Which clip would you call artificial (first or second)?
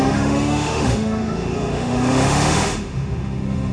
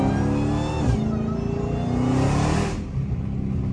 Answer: first